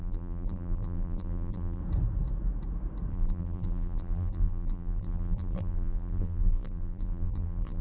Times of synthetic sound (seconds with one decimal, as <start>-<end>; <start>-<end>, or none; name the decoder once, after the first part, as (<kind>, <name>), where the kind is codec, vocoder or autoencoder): 0.0-1.8 (vocoder, BigVGAN v2); 3.1-7.8

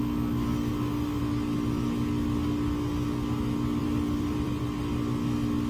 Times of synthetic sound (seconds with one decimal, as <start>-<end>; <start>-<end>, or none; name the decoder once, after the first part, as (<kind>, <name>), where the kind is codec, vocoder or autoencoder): 3.8-4.6 (vocoder, BigVGAN v2)

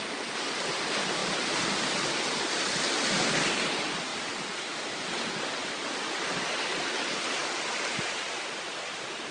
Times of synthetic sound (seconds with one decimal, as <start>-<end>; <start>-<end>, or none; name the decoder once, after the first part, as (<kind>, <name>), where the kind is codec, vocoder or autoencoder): 1.2-2.7 (vocoder, BigVGAN v2); 4.1-5.7; 7.4-8.1